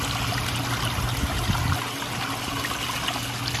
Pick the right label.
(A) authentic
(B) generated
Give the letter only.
A